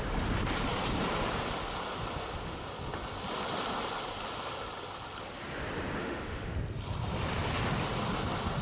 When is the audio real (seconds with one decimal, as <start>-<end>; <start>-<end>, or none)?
0.0-6.0; 6.5-8.6

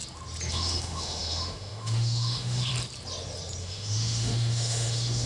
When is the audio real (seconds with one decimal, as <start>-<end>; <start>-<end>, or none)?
0.0-0.5; 2.7-3.6

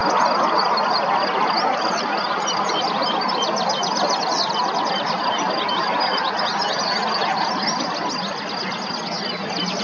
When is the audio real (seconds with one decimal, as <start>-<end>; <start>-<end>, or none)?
0.0-9.8

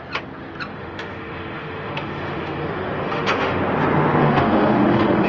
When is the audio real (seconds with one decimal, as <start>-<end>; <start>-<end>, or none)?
0.0-0.7; 3.6-4.2

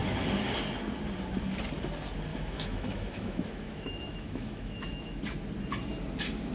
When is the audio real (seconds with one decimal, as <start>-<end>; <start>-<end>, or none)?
0.0-2.3; 5.2-6.5